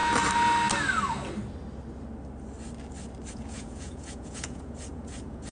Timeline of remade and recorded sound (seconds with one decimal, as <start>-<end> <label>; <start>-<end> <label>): 0.0-3.3 recorded; 3.3-5.5 remade